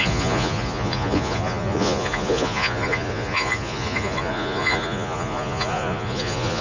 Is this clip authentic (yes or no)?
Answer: no